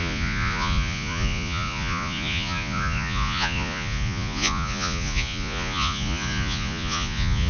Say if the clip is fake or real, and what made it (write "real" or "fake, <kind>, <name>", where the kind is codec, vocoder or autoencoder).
fake, vocoder, Vocos